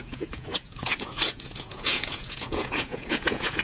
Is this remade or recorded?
remade